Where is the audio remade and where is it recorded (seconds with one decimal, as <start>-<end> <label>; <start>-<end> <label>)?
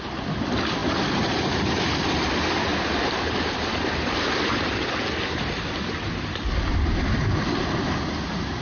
0.0-8.6 remade